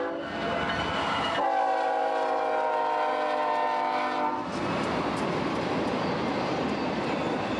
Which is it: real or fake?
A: real